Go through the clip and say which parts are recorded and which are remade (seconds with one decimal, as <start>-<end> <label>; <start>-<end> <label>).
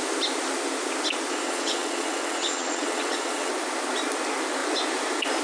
0.0-1.3 recorded; 1.3-3.5 remade; 3.5-5.4 recorded